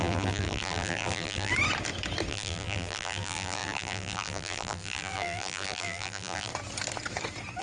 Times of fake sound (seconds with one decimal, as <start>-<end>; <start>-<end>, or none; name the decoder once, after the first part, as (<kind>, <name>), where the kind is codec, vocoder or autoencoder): 0.0-1.5 (vocoder, BigVGAN v2); 2.3-6.5